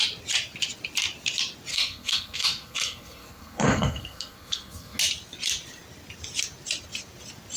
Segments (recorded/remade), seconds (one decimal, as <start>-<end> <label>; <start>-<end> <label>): 0.0-1.7 recorded; 1.7-5.0 remade; 5.0-7.6 recorded